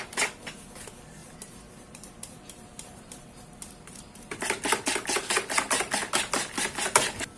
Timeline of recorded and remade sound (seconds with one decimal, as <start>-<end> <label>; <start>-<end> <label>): 0.0-1.2 recorded; 1.2-4.4 remade; 4.4-7.4 recorded